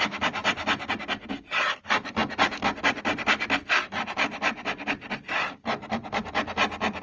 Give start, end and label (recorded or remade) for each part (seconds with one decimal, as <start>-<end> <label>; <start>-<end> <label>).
0.0-7.0 recorded